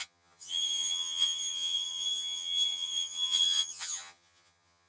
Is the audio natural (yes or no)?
no